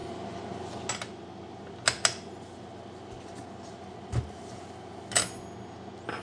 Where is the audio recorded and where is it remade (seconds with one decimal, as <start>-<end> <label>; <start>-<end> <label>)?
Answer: 0.0-6.2 recorded